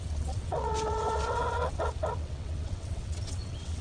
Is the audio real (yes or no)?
no